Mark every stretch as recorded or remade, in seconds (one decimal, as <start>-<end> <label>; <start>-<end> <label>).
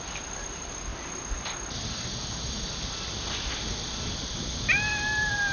0.0-5.5 recorded